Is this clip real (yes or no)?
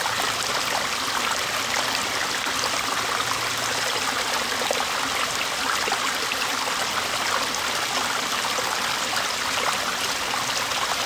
yes